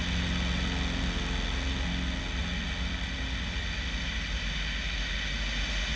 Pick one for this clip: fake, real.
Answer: real